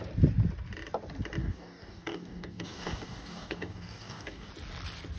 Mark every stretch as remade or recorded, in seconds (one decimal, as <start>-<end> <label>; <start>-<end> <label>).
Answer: 0.0-1.4 recorded; 1.4-4.5 remade; 4.5-5.2 recorded